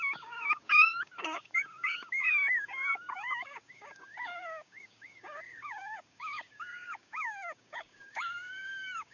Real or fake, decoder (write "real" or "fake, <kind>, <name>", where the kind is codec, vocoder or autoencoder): fake, codec, DAC